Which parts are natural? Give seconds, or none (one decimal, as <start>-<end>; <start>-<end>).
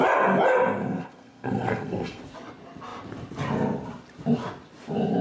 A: 0.0-0.9; 2.2-5.2